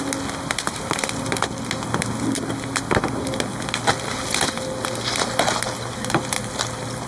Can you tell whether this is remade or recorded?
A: recorded